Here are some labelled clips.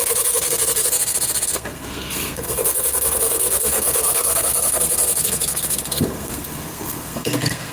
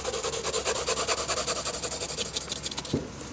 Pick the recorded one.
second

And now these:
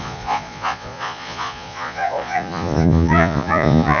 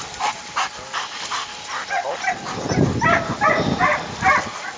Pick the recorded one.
second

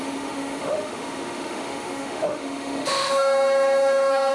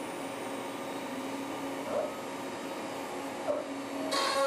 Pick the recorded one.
second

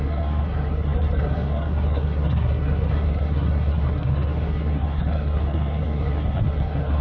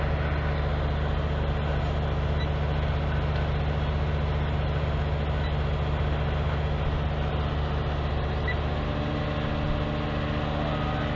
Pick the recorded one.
second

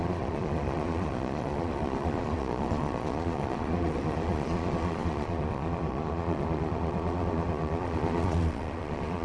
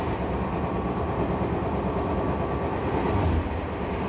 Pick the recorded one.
second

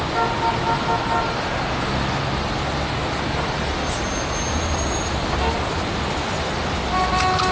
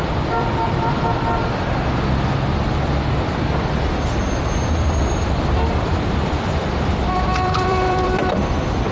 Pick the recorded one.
first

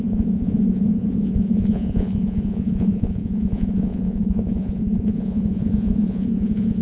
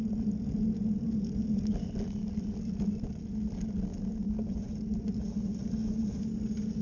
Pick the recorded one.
second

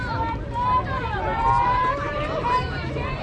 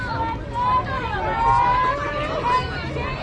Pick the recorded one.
second